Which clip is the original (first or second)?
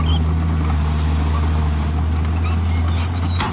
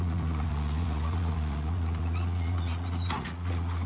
first